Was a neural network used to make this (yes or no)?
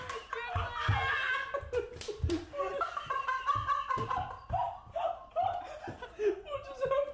no